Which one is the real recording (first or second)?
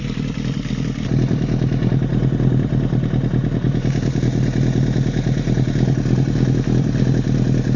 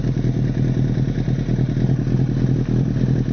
second